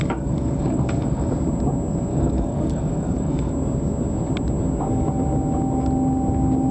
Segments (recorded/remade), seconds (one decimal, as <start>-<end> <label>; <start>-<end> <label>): 0.0-1.3 remade; 1.3-2.1 recorded; 2.1-3.5 remade; 3.5-6.7 recorded